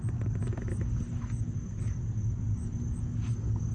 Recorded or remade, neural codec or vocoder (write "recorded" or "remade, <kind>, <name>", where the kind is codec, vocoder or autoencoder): recorded